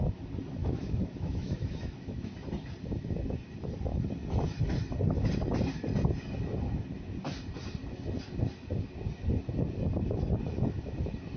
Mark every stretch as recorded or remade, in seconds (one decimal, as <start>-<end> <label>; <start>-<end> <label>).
0.0-0.6 recorded; 0.6-2.3 remade; 2.3-11.4 recorded